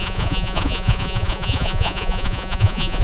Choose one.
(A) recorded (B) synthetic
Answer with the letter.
B